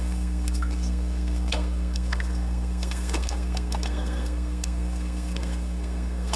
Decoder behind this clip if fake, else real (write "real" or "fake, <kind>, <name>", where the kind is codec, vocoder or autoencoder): fake, codec, SNAC